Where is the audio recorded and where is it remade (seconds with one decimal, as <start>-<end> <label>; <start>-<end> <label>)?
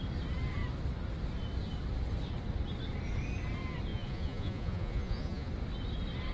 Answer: 0.0-3.9 recorded; 3.9-5.5 remade; 5.5-6.3 recorded